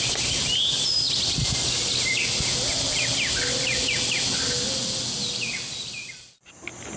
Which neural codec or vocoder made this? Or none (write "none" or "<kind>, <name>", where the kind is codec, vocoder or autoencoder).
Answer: none